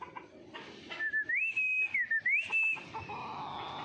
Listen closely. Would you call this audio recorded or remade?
recorded